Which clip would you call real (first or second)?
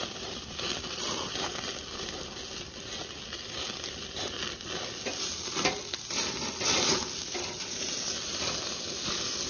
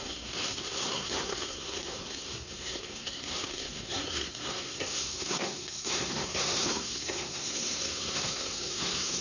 first